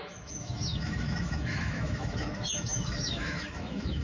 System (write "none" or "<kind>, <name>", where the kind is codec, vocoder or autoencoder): autoencoder, DAC-VAE